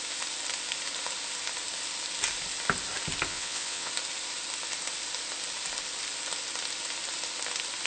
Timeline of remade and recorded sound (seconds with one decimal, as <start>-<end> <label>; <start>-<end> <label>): 0.0-3.3 recorded; 3.3-3.9 remade; 3.9-7.9 recorded